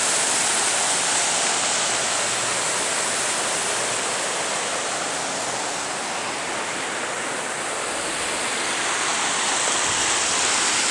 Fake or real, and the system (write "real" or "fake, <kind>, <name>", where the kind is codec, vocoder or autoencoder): real